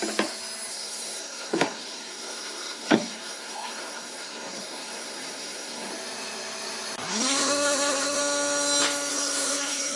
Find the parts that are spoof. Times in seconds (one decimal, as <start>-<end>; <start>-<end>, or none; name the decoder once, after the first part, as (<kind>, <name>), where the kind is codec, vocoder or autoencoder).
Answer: 0.7-5.9 (codec, SNAC); 7.1-8.2; 9.1-10.0